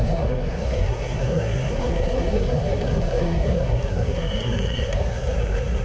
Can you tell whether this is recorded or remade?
remade